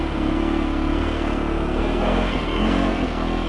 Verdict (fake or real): fake